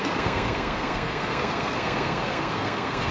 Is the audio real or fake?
fake